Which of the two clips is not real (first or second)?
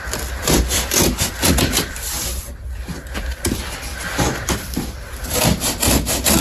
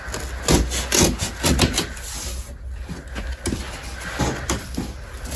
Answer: first